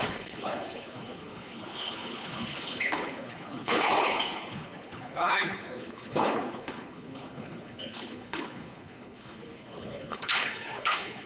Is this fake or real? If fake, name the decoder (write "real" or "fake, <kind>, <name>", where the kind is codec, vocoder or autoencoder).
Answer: fake, codec, HILCodec